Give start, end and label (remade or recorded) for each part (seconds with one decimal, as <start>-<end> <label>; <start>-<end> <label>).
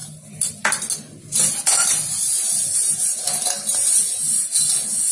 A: 0.0-0.5 remade; 0.5-5.1 recorded